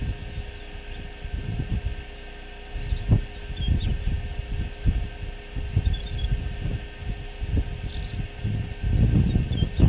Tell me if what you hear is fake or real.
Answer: real